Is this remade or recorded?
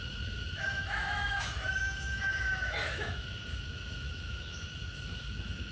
remade